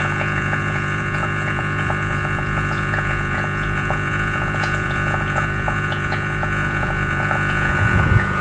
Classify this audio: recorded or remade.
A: remade